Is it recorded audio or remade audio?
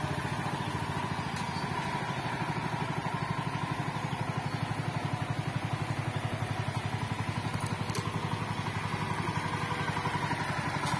recorded